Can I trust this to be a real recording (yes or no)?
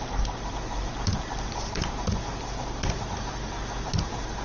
yes